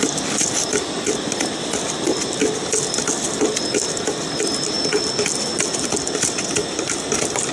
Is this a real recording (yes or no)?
yes